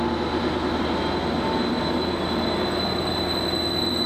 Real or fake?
real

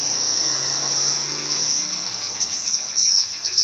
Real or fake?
fake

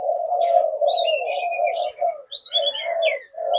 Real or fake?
real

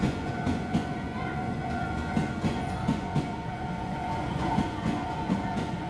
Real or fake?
fake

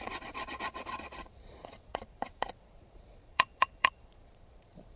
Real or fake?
fake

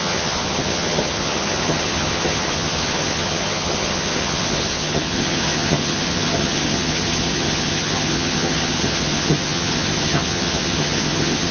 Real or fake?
fake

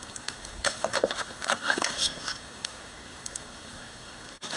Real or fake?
fake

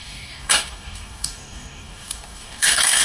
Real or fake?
fake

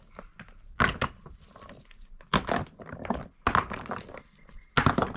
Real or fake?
real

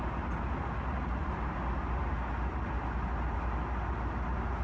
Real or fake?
real